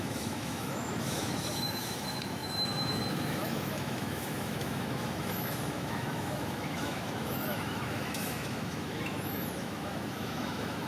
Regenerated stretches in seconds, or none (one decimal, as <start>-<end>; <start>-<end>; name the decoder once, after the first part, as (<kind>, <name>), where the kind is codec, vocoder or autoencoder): 0.0-10.9 (autoencoder, DAC-VAE)

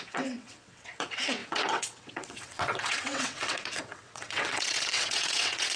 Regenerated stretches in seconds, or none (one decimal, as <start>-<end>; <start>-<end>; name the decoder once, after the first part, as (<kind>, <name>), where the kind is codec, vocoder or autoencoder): 0.0-5.8 (vocoder, WaveNeXt)

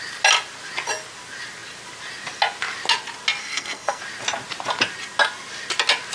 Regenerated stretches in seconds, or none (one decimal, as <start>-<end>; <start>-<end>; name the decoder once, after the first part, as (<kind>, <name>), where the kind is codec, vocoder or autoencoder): 3.4-4.0 (codec, SNAC)

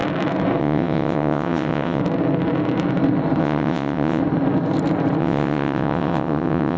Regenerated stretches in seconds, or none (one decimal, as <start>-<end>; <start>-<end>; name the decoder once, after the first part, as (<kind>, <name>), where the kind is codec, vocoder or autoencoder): 0.6-2.0 (vocoder, WaveNeXt); 3.4-4.2; 5.2-6.8

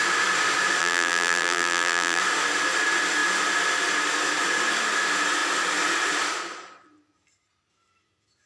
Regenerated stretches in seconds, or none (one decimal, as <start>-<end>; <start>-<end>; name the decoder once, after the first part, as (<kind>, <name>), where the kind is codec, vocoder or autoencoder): 0.8-2.2 (vocoder, BigVGAN v2)

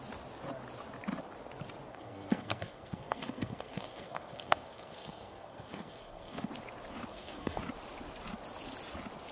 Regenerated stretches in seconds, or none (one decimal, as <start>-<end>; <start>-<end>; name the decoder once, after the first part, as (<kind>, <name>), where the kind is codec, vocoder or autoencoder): 1.9-6.5 (codec, SNAC); 7.1-7.6

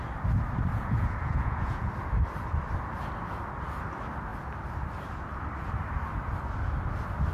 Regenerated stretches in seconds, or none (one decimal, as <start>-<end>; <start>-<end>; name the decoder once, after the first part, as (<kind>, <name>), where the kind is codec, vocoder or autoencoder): 0.7-1.9 (vocoder, Vocos)